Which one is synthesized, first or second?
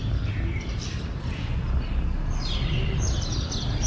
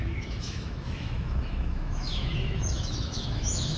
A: second